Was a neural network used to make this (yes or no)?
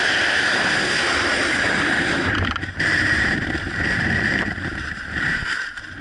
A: yes